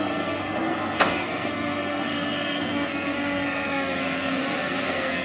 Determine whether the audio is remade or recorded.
remade